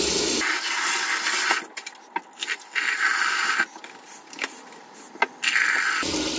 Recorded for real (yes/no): yes